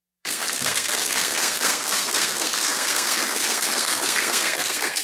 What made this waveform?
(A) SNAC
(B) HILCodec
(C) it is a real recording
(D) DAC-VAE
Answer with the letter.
A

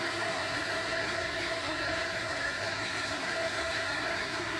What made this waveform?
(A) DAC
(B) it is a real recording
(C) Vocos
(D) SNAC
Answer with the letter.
D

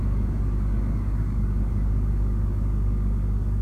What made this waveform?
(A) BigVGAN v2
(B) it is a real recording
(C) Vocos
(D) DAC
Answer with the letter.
D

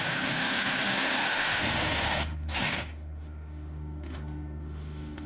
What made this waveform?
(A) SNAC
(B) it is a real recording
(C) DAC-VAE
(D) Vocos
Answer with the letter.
C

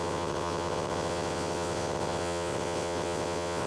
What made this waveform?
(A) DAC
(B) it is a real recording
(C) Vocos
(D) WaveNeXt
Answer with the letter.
D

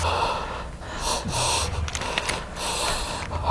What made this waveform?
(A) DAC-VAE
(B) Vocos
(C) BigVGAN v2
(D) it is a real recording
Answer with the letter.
D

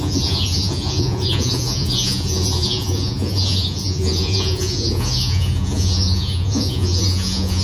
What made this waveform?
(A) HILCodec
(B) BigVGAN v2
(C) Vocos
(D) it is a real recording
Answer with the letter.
C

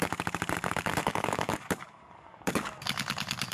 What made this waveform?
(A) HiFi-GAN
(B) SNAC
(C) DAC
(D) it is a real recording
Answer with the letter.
C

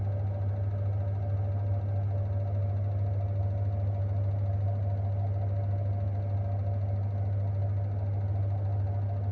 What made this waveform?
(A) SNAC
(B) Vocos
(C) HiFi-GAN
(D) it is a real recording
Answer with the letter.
D